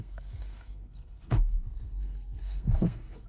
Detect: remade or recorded remade